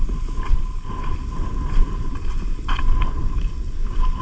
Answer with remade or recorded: recorded